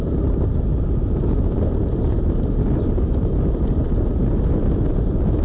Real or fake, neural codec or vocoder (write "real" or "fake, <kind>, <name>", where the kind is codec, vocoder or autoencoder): real